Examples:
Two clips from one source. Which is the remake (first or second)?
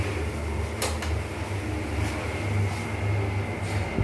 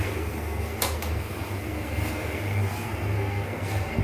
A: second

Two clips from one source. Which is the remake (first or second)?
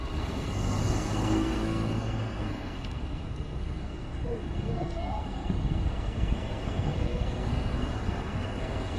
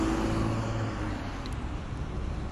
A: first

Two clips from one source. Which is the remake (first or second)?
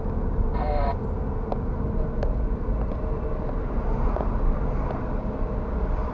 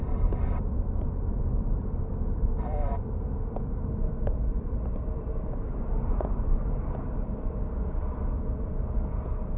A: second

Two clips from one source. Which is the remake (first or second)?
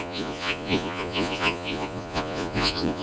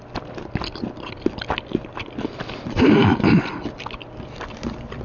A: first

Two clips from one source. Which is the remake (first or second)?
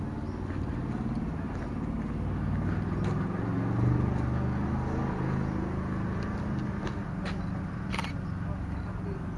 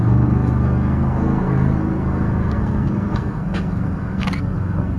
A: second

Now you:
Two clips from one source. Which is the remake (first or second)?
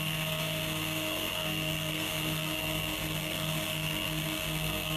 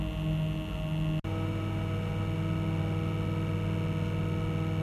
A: first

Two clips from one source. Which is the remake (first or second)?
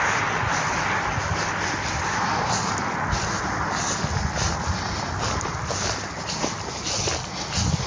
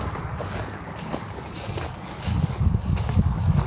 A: second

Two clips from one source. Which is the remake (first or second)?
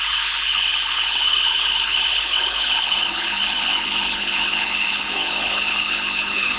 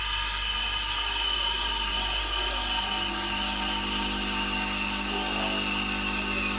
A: first